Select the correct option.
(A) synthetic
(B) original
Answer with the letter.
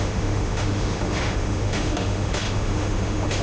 A